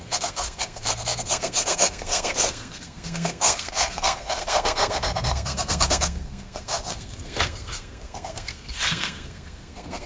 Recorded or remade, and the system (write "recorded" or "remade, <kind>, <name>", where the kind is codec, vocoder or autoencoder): remade, codec, SNAC